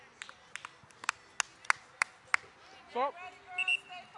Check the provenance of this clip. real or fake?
real